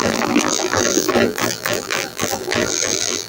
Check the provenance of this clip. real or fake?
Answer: fake